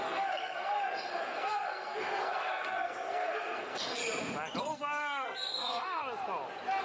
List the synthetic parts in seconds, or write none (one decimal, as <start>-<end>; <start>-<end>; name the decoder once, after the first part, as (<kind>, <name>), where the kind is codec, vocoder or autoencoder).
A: 0.0-4.0 (codec, SNAC); 4.6-6.0